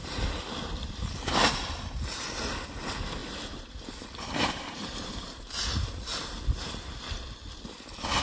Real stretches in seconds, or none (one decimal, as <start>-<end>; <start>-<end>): 2.1-3.2; 7.0-8.2